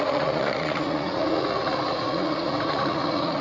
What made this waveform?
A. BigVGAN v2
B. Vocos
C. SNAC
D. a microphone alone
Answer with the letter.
B